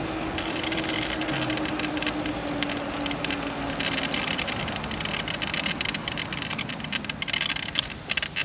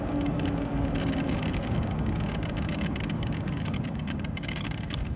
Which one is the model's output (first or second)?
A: second